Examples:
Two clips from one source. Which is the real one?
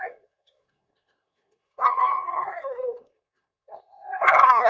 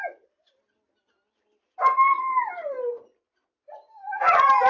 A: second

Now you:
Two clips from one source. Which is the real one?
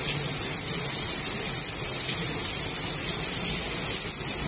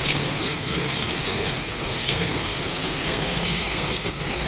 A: first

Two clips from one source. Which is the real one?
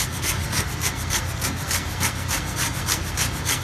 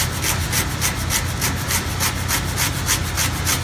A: second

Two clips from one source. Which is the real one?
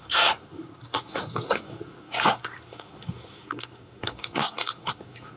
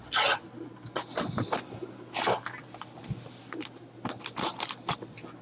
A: second